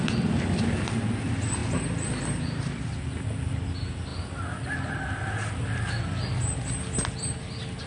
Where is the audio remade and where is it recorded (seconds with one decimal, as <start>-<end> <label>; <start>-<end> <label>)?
0.0-1.6 remade; 1.6-2.2 recorded; 2.2-4.1 remade; 4.1-7.9 recorded